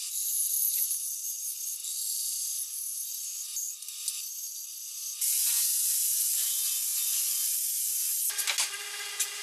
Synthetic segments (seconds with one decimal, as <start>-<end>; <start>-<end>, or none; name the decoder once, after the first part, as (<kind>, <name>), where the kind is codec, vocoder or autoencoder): none